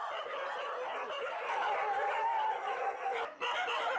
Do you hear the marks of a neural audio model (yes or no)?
no